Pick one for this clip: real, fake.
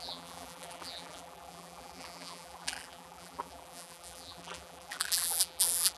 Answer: fake